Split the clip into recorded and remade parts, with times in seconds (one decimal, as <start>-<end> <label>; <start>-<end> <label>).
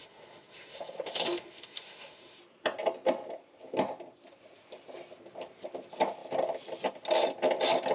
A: 0.0-2.4 remade; 2.4-7.9 recorded